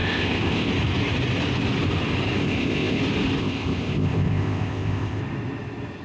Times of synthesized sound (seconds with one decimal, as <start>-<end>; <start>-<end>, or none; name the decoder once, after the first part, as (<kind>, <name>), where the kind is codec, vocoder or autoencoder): 0.0-0.7 (codec, ZipCodec); 2.4-3.0; 3.4-5.2